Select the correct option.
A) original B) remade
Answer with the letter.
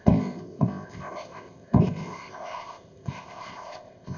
B